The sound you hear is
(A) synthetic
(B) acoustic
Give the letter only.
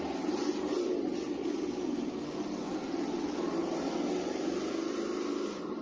B